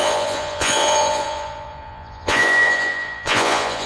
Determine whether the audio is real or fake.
fake